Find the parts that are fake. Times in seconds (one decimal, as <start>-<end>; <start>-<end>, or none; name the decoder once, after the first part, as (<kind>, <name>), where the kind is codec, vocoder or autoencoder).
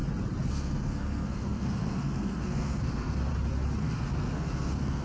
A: 0.5-3.3 (codec, SNAC); 3.8-5.0